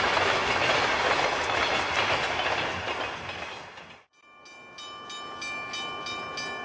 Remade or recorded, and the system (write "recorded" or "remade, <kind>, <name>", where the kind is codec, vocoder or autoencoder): recorded